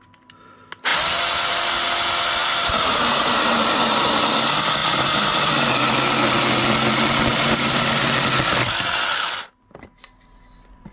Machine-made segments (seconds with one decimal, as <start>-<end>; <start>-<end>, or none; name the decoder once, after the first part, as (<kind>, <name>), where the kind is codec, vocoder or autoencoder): 2.4-4.2 (vocoder, BigVGAN v2); 4.8-5.5; 7.3-8.0

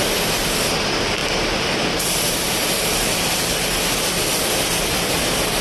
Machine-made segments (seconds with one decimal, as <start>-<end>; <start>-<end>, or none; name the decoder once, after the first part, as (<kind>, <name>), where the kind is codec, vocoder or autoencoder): none

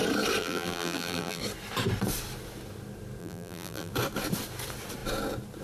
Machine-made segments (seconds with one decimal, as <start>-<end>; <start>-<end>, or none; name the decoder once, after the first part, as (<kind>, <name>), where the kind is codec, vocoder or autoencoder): 0.4-1.4 (vocoder, BigVGAN v2); 3.2-3.9

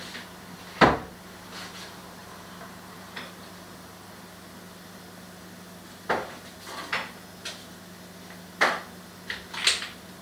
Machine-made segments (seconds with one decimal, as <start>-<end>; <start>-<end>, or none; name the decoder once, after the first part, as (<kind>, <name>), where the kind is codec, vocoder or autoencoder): 2.2-3.2 (vocoder, BigVGAN v2)

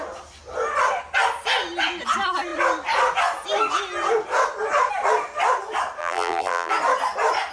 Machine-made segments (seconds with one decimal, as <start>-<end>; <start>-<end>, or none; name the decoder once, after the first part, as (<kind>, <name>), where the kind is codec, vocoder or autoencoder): 6.0-6.7 (vocoder, BigVGAN v2)